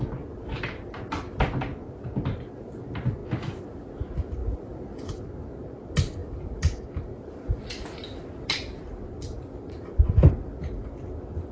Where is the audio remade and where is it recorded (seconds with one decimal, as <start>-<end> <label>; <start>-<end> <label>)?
0.0-6.2 recorded; 6.2-6.9 remade; 6.9-11.5 recorded